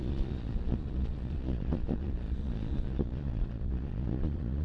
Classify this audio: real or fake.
fake